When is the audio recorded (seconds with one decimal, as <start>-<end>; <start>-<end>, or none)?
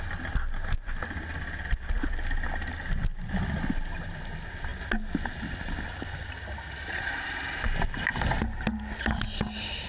0.0-9.9